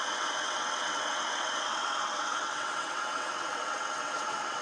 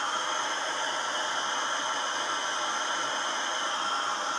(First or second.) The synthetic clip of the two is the first